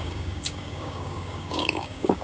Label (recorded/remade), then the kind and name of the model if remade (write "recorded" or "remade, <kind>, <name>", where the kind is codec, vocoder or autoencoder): remade, codec, DAC